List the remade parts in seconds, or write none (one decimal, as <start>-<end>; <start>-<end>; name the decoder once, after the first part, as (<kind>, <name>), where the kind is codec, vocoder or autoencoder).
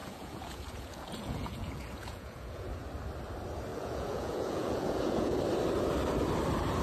0.0-2.7 (vocoder, Vocos); 3.7-5.4